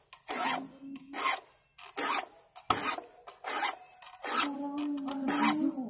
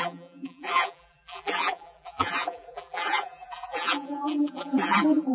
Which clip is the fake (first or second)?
second